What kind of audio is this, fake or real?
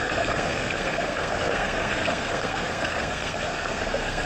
fake